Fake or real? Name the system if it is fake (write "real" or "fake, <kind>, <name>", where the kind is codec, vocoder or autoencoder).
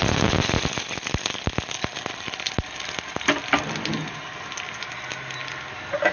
real